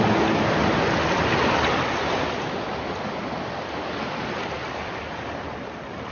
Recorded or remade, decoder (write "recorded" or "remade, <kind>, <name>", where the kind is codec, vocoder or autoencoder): recorded